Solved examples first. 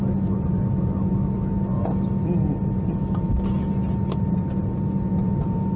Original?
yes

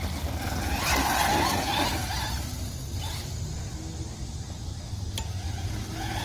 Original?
yes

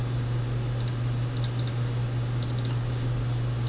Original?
yes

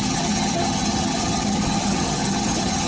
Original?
no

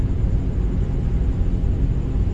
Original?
yes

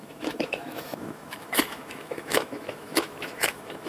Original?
no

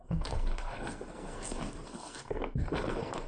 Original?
no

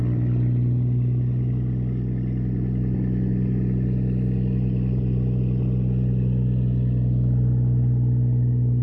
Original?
yes